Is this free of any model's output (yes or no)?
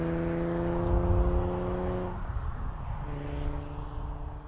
yes